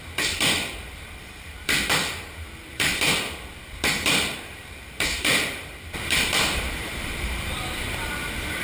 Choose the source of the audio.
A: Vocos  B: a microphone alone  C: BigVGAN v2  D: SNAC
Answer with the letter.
C